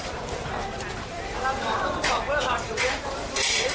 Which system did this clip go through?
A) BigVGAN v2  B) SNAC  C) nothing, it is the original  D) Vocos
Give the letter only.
A